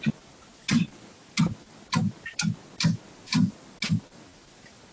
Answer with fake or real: real